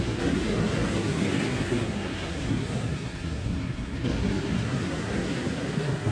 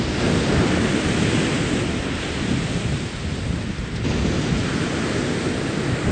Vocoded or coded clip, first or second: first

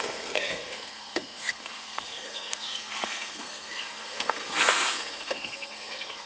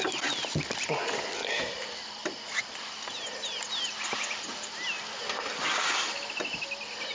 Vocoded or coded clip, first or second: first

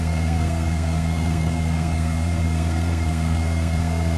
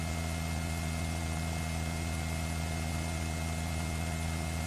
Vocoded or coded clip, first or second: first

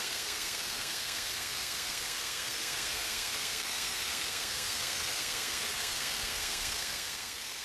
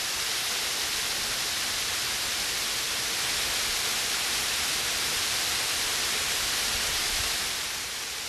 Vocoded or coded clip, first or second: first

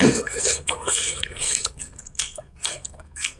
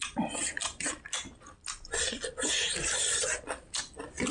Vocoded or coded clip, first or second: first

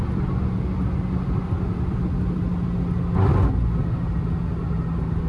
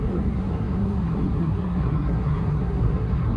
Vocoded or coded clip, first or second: second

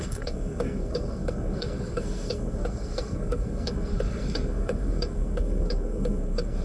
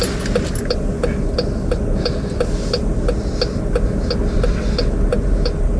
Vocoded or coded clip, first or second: first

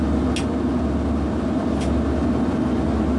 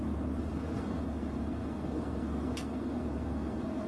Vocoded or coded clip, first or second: second